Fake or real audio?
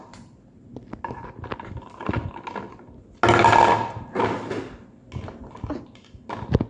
real